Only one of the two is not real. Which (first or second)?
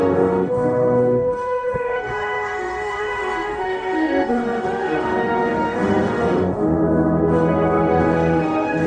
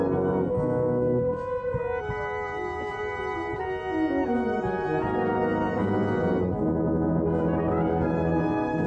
first